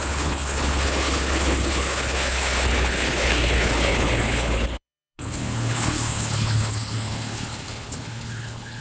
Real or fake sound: fake